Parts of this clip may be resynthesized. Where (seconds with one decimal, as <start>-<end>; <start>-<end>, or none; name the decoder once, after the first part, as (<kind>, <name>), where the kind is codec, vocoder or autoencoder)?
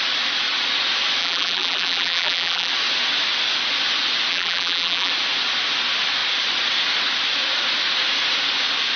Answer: 1.2-2.7 (vocoder, BigVGAN v2); 4.3-5.1